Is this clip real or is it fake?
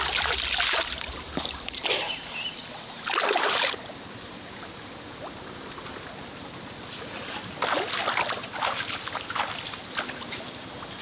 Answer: real